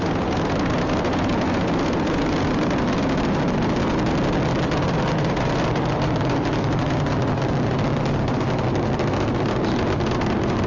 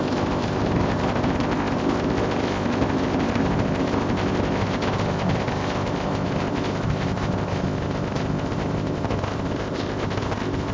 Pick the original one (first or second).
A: first